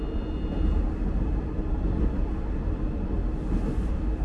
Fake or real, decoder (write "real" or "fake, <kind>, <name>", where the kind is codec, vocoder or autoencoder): real